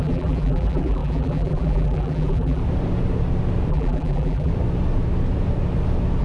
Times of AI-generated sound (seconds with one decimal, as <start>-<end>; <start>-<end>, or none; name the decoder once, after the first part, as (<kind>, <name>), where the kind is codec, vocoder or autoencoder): 0.0-2.6 (vocoder, BigVGAN v2); 3.7-4.5